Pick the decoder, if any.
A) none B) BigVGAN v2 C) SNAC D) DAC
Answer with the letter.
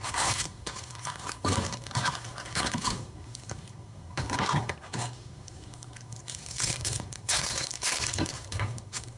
C